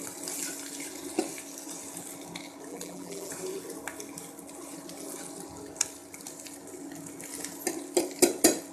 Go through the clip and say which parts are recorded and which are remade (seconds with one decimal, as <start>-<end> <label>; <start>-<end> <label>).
0.0-2.7 recorded; 2.7-3.3 remade; 3.3-8.7 recorded